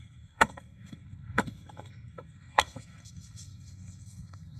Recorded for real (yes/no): no